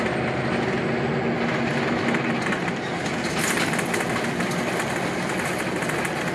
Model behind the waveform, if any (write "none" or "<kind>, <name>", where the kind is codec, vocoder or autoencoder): none